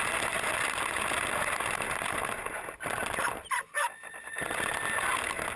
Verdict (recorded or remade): recorded